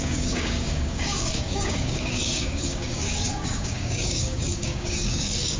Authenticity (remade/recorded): remade